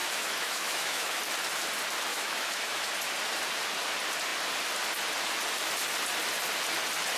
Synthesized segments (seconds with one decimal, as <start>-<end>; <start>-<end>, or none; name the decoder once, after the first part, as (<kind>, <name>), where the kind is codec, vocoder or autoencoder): 0.0-1.2 (autoencoder, DAC-VAE); 2.1-2.9